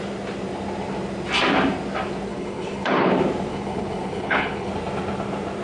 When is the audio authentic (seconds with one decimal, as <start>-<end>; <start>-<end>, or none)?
0.0-2.3; 3.1-3.5; 4.7-5.6